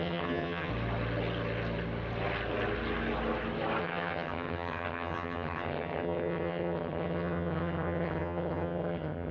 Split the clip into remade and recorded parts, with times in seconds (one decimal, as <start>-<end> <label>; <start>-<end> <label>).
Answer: 0.0-0.7 remade; 0.7-3.8 recorded; 3.8-9.3 remade